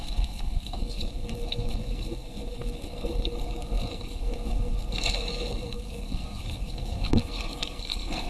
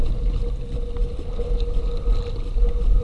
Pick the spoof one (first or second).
first